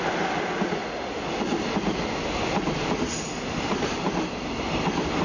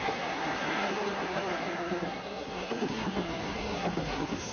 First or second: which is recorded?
first